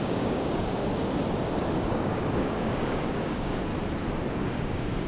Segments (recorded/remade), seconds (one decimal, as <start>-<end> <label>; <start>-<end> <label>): 0.0-0.8 remade; 0.8-1.8 recorded; 1.8-3.7 remade; 3.7-4.3 recorded; 4.3-5.1 remade